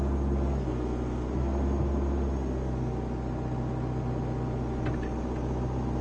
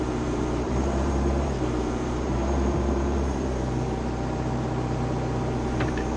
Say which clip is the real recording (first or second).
first